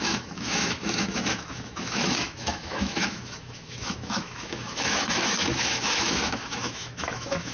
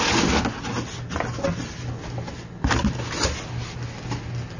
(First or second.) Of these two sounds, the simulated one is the first